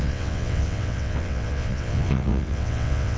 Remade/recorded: remade